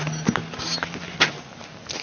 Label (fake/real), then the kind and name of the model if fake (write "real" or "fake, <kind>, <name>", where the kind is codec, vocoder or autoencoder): real